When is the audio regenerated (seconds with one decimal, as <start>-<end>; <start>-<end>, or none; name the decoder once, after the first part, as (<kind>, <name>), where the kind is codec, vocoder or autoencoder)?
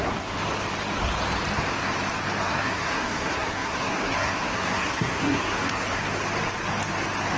0.0-0.4 (codec, SNAC); 2.4-6.0